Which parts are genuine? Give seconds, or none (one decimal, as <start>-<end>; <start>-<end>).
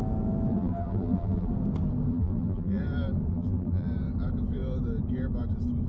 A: 0.0-0.5; 1.5-2.1; 2.8-3.3; 3.9-5.9